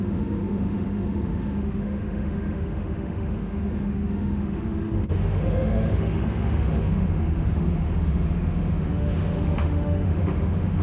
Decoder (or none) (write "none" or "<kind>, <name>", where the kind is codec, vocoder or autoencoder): autoencoder, DAC-VAE